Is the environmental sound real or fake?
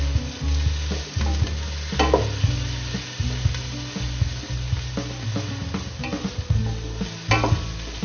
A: real